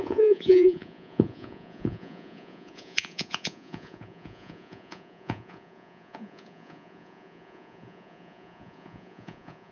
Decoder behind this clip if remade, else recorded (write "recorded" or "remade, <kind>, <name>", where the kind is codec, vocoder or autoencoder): remade, vocoder, Vocos